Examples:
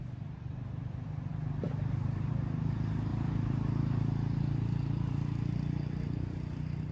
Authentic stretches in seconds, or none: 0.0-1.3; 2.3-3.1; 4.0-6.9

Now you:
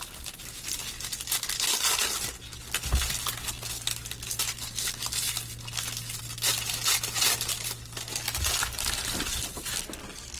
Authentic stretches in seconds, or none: 0.0-10.4

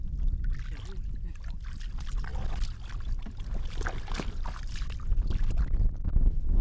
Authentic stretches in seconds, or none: 0.0-6.6

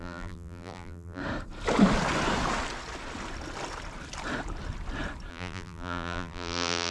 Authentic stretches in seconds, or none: 1.2-5.3